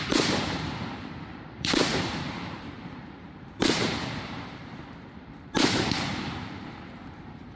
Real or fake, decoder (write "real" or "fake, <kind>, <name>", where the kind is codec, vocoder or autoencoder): fake, vocoder, BigVGAN v2